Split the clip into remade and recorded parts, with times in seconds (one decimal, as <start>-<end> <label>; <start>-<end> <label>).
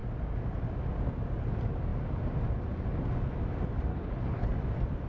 0.0-3.9 recorded; 3.9-4.5 remade; 4.5-5.1 recorded